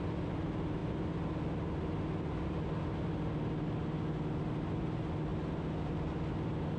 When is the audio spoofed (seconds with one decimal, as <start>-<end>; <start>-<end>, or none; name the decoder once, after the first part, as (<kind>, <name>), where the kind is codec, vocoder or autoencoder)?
none